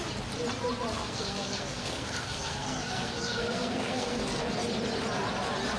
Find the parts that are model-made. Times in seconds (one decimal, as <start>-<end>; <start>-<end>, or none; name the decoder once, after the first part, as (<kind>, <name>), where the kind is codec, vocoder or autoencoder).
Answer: 0.9-4.4 (codec, SNAC)